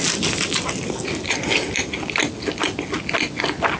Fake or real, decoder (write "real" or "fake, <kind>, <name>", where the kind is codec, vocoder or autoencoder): real